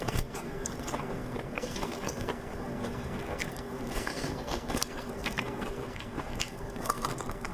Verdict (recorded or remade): remade